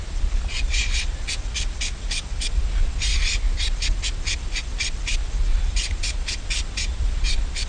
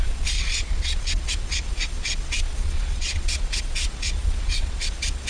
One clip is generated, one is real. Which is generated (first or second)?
second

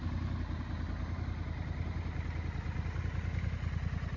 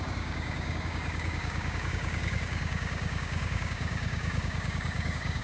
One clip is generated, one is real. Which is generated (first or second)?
second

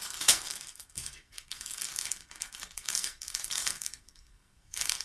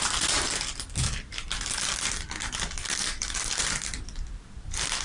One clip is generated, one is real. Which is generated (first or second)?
first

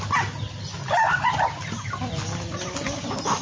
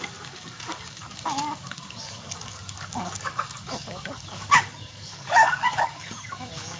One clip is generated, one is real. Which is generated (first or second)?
second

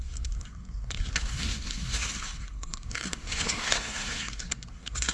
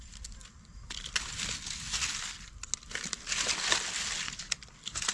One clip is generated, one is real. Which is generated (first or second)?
first